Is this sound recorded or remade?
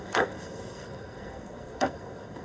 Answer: remade